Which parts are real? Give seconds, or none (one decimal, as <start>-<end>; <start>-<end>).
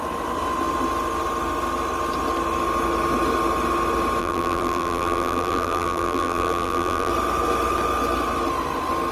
0.0-4.2; 7.1-9.1